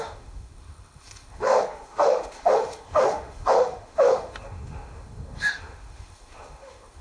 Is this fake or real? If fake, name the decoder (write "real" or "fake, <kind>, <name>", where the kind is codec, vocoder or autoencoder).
fake, autoencoder, DAC-VAE